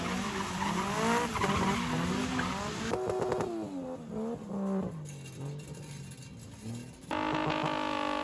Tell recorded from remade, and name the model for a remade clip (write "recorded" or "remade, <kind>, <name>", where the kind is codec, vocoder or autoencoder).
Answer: recorded